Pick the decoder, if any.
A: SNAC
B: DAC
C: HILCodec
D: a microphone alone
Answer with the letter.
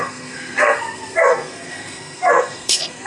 A